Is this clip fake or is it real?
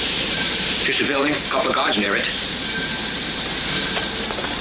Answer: fake